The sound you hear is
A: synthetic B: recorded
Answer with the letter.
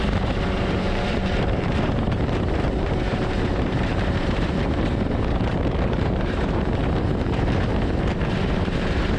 A